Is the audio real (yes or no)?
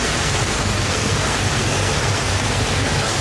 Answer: no